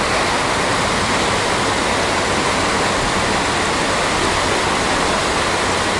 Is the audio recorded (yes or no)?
yes